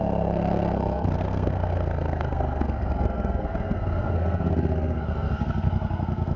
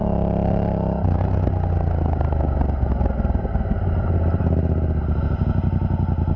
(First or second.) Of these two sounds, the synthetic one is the first